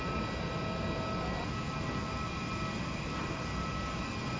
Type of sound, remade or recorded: recorded